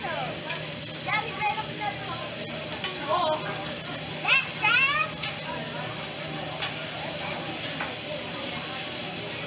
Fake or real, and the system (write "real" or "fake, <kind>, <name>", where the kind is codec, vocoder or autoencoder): real